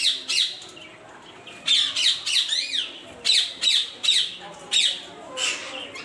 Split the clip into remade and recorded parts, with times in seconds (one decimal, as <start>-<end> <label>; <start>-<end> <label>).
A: 0.0-6.0 recorded